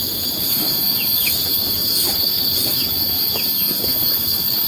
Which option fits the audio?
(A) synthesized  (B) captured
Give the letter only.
A